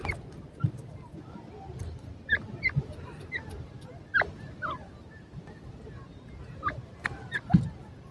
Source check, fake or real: real